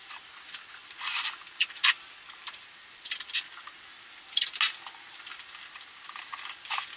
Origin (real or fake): real